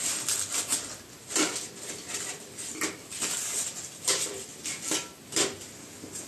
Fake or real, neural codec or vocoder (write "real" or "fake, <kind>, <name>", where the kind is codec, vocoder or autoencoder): real